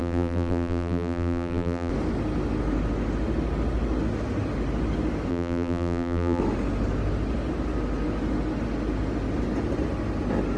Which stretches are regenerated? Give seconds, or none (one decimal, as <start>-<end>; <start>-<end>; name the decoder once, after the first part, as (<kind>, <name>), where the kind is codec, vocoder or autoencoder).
0.0-1.9 (vocoder, BigVGAN v2); 5.3-6.4